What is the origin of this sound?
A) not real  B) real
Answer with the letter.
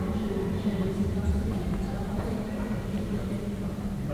A